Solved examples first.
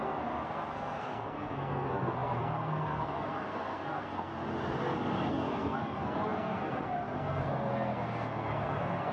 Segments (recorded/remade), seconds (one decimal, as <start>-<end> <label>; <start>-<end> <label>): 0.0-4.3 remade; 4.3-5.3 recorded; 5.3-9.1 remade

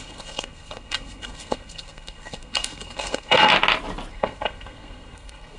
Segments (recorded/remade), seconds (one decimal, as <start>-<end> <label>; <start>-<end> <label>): 0.0-3.5 remade; 3.5-4.1 recorded; 4.1-5.6 remade

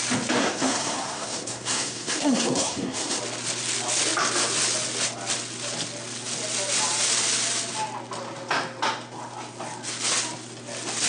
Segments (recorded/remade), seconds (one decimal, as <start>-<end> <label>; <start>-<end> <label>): 0.0-0.4 recorded; 0.4-3.2 remade; 3.2-11.1 recorded

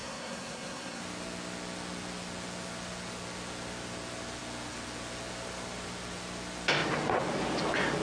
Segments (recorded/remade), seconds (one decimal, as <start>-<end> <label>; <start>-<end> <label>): 0.0-1.0 remade; 1.0-8.0 recorded